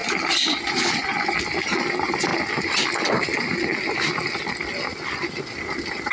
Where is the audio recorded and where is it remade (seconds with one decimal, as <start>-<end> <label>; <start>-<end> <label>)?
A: 0.0-0.7 recorded; 0.7-1.1 remade; 1.1-1.9 recorded; 1.9-2.3 remade; 2.3-6.1 recorded